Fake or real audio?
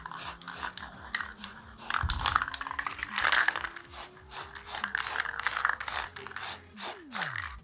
real